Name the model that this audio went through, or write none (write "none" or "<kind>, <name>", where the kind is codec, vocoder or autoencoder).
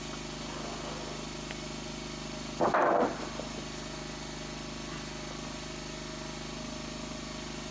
none